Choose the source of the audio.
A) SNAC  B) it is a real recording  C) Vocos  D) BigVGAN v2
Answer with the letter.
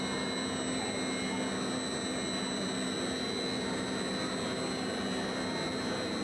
B